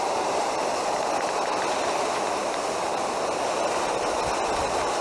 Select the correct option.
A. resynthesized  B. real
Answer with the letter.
B